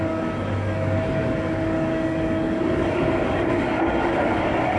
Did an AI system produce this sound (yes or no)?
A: yes